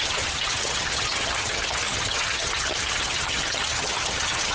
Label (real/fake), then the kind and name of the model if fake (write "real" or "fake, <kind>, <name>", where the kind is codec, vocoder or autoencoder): fake, vocoder, HiFi-GAN